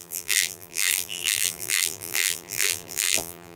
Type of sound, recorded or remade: remade